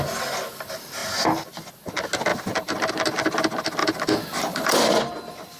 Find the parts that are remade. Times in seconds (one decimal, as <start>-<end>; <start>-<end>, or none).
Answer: 2.3-2.9; 3.8-5.0